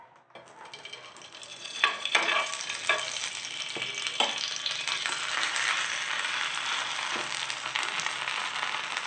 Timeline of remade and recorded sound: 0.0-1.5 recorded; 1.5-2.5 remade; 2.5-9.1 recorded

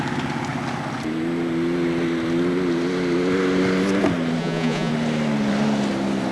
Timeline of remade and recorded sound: 0.0-4.4 recorded; 4.4-4.9 remade; 4.9-6.3 recorded

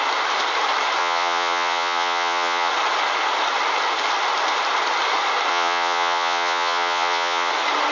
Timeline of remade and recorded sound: 0.0-1.0 recorded; 1.0-2.7 remade; 2.7-5.5 recorded; 5.5-7.5 remade; 7.5-7.9 recorded

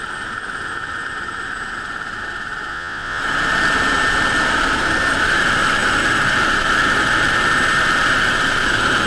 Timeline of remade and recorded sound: 0.0-2.7 recorded; 2.7-3.2 remade; 3.2-9.1 recorded

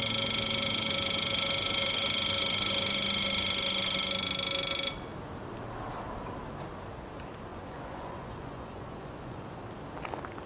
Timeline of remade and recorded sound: 0.0-7.5 recorded; 7.5-9.6 remade; 9.6-10.5 recorded